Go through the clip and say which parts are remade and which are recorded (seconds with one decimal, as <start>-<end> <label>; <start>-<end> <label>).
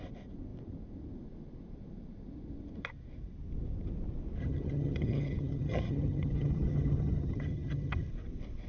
0.0-4.4 recorded; 4.4-8.1 remade; 8.1-8.7 recorded